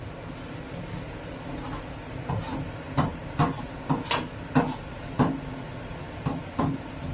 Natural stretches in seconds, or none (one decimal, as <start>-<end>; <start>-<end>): 0.0-7.1

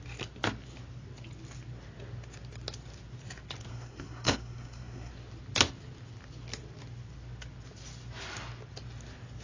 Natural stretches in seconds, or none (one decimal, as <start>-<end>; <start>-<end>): 0.0-3.7; 5.1-9.4